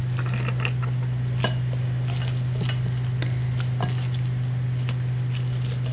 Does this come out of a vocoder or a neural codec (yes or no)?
no